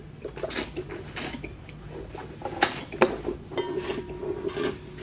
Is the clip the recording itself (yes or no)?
yes